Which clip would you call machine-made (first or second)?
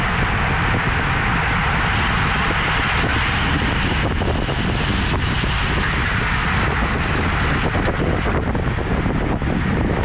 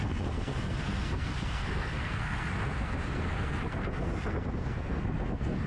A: second